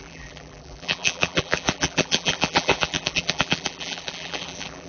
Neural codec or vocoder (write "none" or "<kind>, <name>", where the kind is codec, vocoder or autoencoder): vocoder, BigVGAN v2